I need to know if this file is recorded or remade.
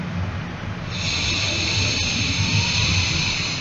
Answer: recorded